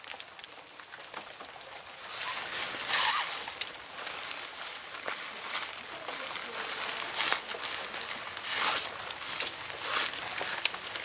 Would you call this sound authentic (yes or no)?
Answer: yes